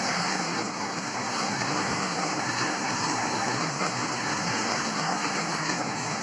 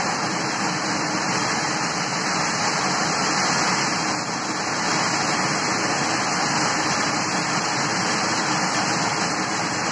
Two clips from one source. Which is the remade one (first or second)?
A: first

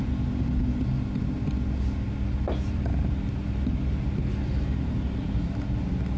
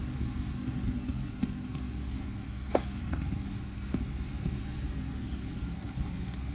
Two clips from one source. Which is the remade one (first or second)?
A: second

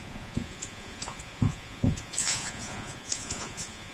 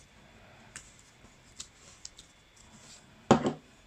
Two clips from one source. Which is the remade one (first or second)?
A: first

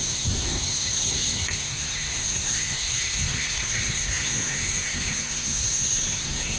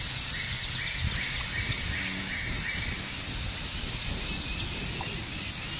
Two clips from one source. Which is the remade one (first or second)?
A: first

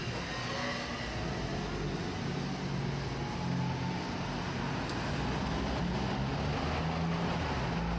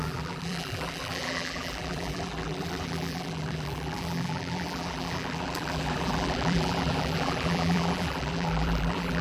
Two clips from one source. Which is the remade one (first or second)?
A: second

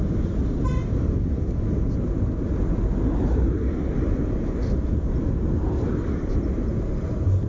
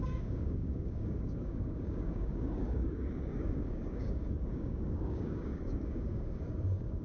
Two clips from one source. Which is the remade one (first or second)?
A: second